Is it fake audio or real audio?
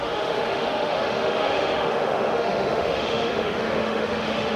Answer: fake